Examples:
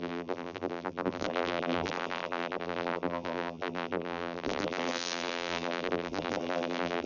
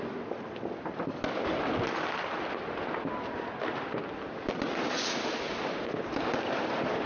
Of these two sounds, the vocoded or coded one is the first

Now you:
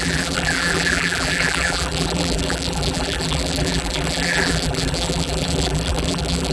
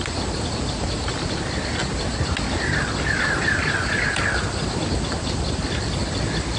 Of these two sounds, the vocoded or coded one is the first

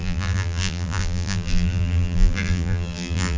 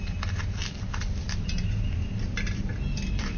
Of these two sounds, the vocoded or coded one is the first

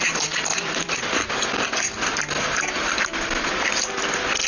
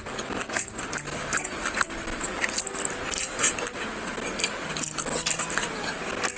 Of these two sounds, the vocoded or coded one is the first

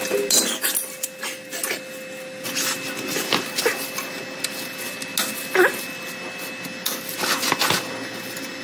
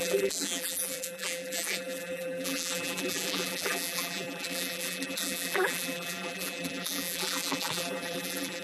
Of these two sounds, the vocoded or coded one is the second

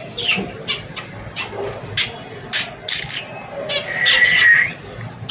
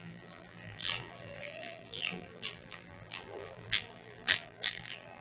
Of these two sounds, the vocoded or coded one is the second